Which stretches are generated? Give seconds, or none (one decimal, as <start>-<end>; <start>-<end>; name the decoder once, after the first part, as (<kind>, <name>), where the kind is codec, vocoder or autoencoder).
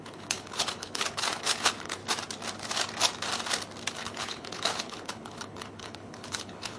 0.0-2.0 (codec, HILCodec); 3.9-6.8